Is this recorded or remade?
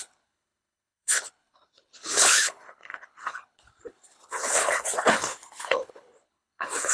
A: remade